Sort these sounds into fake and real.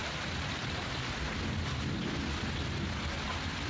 real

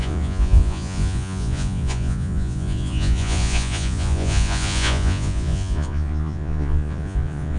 fake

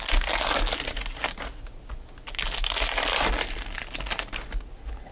real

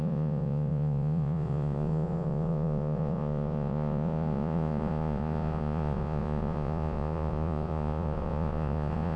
fake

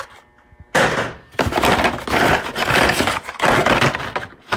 real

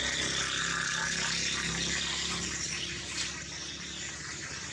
real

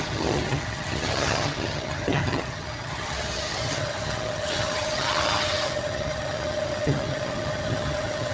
fake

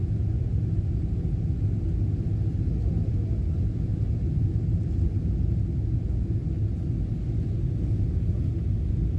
real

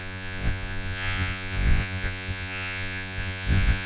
fake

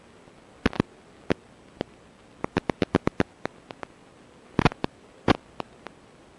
real